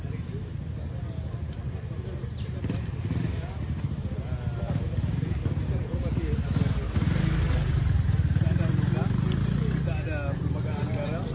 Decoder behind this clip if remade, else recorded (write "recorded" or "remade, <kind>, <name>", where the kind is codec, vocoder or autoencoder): recorded